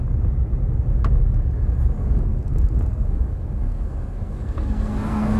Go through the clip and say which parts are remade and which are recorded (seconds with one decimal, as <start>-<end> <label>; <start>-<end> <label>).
0.0-2.0 recorded; 2.0-5.4 remade